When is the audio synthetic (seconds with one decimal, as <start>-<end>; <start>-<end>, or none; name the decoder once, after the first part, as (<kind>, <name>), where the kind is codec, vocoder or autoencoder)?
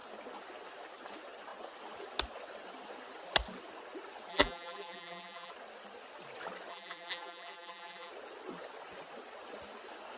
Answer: 4.3-5.5 (vocoder, BigVGAN v2); 6.7-8.1